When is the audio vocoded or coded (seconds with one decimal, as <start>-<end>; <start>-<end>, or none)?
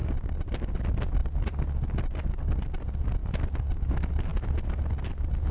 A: none